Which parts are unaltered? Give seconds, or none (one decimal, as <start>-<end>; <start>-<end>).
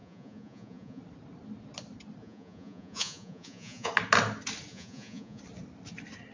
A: 1.0-2.2; 3.9-4.7; 5.4-6.3